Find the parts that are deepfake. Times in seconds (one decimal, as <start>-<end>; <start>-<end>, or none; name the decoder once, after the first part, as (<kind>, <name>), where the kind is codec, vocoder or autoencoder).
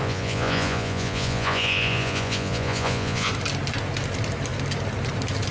0.0-3.3 (vocoder, Vocos)